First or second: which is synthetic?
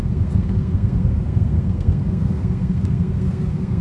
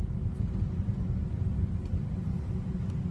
first